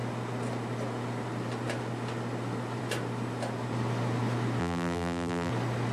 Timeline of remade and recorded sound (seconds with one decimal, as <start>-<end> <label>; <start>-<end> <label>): 0.0-4.6 recorded; 4.6-5.5 remade; 5.5-5.9 recorded